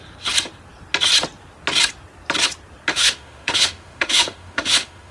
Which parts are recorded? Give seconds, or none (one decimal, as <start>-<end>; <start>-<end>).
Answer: 0.0-2.9